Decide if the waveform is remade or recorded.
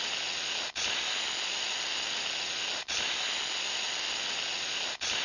recorded